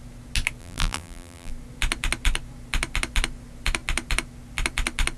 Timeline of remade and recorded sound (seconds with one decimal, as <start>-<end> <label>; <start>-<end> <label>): 0.0-0.6 recorded; 0.6-1.5 remade; 1.5-5.2 recorded